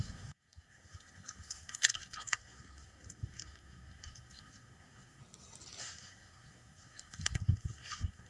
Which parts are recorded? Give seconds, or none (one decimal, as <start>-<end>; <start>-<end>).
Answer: 5.2-5.8